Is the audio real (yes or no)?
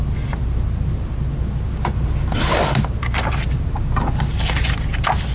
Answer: yes